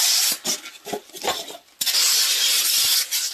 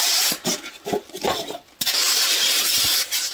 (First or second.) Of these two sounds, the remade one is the second